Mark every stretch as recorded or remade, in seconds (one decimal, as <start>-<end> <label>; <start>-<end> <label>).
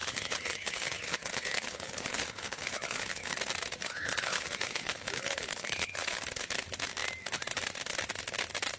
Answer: 0.0-3.3 remade; 3.3-3.8 recorded; 3.8-6.2 remade; 6.2-8.8 recorded